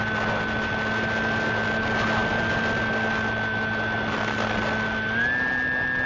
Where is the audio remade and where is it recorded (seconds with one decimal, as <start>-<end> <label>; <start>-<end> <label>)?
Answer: 0.0-6.1 recorded